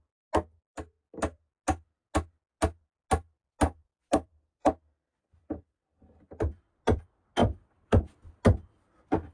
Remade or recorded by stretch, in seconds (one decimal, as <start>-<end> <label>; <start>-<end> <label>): 0.0-3.8 recorded; 3.8-4.8 remade; 4.8-7.4 recorded; 7.4-8.0 remade; 8.0-9.3 recorded